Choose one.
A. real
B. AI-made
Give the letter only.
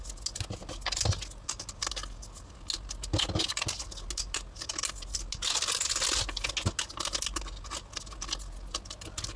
A